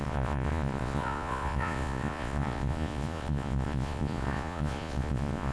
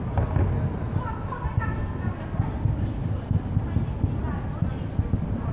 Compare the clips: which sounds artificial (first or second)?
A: first